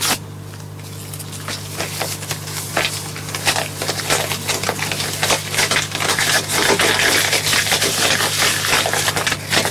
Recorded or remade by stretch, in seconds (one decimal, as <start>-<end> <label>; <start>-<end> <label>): 0.0-9.7 recorded